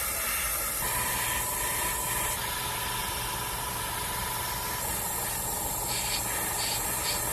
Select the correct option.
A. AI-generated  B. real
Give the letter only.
B